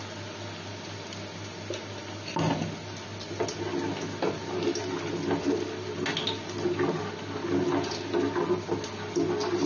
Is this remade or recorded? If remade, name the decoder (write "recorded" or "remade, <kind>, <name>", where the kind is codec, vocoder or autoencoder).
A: recorded